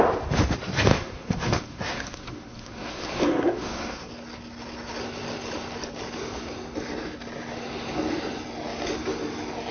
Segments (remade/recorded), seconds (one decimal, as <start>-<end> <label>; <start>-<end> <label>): 0.0-0.9 recorded; 0.9-4.1 remade; 4.1-9.7 recorded